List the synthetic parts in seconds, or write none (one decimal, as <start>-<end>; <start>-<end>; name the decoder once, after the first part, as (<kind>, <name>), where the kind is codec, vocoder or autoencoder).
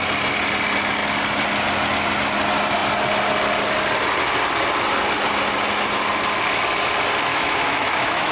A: 7.3-8.3 (autoencoder, DAC-VAE)